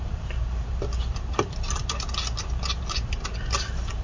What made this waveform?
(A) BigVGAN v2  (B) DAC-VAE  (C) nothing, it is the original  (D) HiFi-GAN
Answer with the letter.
C